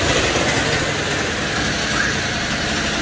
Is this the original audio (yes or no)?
yes